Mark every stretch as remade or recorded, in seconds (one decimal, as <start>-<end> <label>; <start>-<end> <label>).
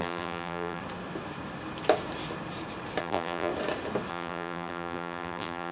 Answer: 0.0-0.8 remade; 0.8-3.0 recorded; 3.0-3.5 remade; 3.5-4.1 recorded; 4.1-5.7 remade